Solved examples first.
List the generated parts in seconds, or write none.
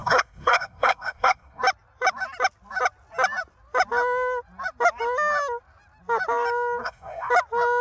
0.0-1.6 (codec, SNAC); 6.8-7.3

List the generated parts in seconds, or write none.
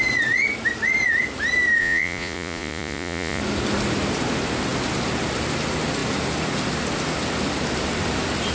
1.8-3.4 (vocoder, Vocos)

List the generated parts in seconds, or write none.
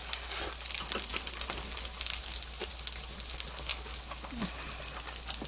none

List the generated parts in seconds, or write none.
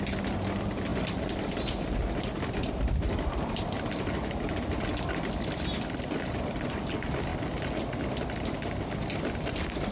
none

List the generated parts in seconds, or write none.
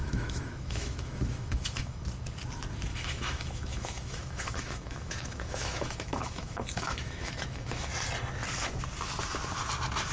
0.0-2.0 (autoencoder, DAC-VAE); 2.9-7.9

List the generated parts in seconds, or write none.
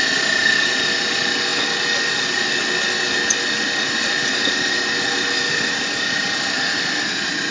none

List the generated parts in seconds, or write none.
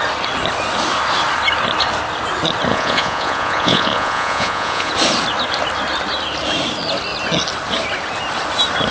2.7-4.9 (vocoder, Vocos)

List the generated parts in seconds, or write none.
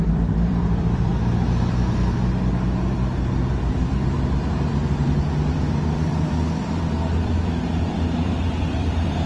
0.0-1.1 (vocoder, BigVGAN v2); 3.7-9.3